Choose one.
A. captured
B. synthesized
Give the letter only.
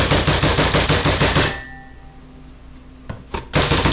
A